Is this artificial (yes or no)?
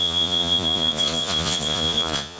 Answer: yes